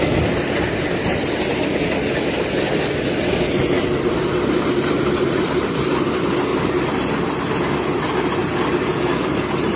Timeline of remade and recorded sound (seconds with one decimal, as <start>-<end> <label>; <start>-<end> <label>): 0.0-6.5 recorded; 6.5-7.2 remade; 7.2-9.8 recorded